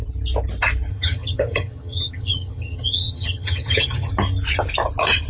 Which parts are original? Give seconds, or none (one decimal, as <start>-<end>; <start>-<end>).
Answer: 0.0-0.9; 4.1-5.3